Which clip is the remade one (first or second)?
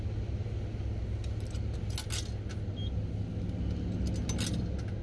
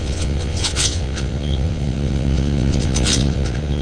second